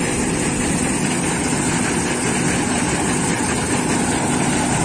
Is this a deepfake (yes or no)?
no